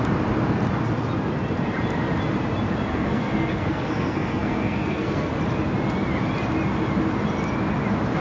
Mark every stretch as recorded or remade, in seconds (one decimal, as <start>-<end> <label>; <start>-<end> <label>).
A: 0.0-2.9 recorded; 2.9-5.3 remade; 5.3-8.2 recorded